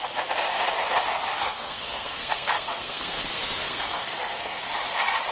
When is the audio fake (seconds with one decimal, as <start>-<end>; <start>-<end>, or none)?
1.4-4.6